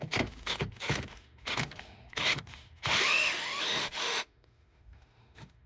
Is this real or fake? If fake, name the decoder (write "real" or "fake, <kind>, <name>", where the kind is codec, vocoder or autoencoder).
fake, autoencoder, DAC-VAE